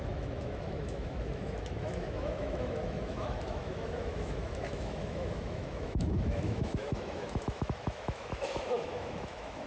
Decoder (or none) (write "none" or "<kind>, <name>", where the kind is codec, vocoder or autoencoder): autoencoder, DAC-VAE